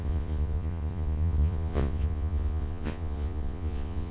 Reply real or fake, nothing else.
fake